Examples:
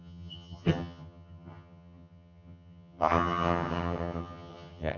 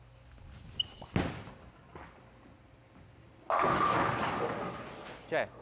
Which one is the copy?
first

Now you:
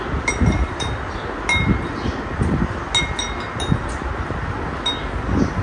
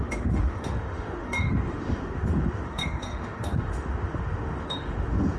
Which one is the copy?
second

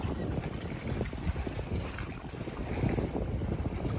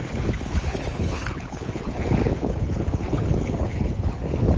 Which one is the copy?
second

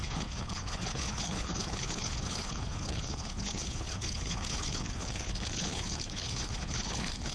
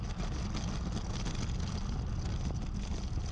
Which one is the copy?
first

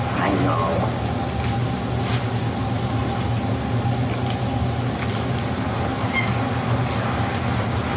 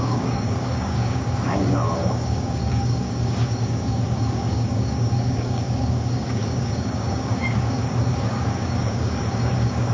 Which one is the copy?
second